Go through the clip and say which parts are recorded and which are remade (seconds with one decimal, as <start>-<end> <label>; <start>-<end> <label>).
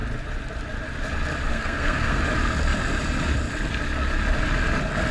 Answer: 0.0-1.5 recorded; 1.5-2.2 remade; 2.2-5.1 recorded